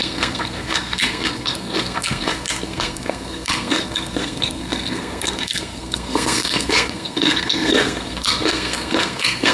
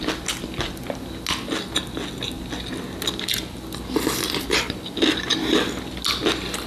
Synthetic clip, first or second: first